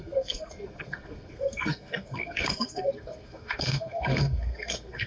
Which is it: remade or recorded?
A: remade